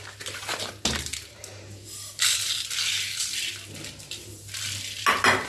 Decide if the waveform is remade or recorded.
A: recorded